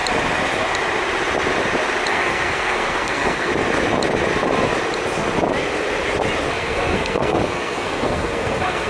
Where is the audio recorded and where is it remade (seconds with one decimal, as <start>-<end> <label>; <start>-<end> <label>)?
0.0-2.1 recorded; 2.1-3.5 remade; 3.5-6.5 recorded; 6.5-8.9 remade